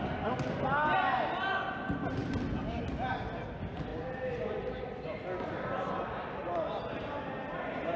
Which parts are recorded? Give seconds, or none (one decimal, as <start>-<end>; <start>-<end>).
0.0-8.0